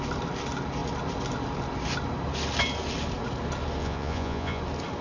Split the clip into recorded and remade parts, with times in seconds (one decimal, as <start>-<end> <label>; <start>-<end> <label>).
0.0-3.8 recorded; 3.8-4.6 remade; 4.6-5.0 recorded